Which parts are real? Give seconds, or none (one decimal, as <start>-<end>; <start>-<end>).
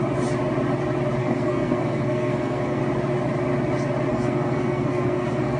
0.0-1.2; 2.8-4.1